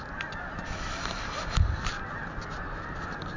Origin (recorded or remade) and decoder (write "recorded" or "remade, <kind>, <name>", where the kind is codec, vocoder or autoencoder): recorded